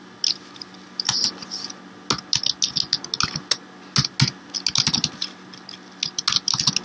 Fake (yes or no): no